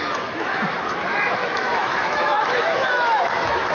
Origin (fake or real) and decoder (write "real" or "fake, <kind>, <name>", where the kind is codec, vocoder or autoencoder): fake, autoencoder, DAC-VAE